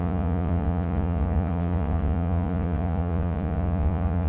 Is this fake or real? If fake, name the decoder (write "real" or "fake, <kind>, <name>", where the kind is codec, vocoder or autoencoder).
fake, vocoder, Vocos